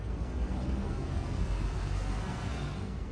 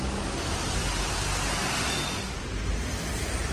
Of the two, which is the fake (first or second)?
first